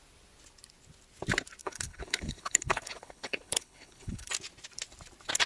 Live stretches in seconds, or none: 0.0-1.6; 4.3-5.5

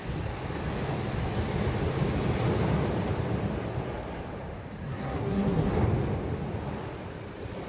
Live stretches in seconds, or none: 0.0-4.8; 5.7-7.7

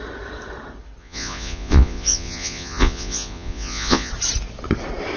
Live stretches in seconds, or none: 0.0-1.0; 4.1-5.2